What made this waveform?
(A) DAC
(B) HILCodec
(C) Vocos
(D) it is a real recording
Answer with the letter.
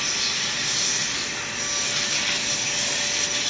D